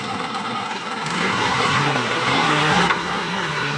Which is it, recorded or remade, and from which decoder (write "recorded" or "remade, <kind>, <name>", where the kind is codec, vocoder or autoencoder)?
remade, codec, SNAC